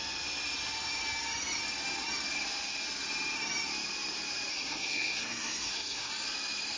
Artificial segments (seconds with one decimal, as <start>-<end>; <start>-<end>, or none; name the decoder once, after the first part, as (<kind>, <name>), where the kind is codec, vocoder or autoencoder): 4.5-6.1 (codec, SNAC)